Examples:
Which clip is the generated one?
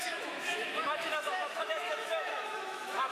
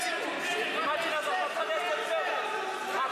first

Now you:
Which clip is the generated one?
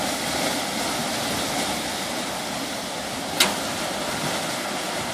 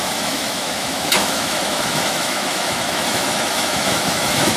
second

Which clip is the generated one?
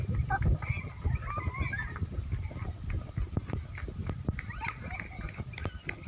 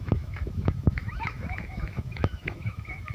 second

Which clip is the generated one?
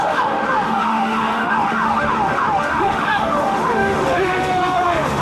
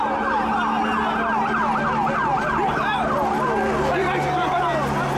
first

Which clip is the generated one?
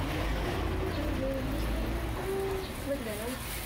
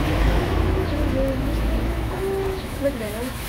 second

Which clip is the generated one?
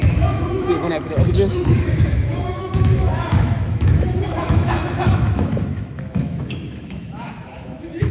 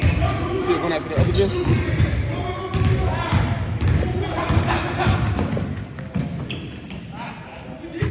first